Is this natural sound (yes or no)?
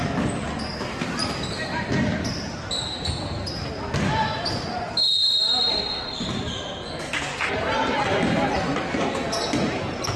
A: yes